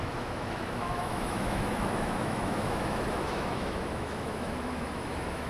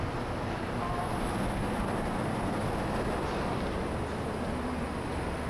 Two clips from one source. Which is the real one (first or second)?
second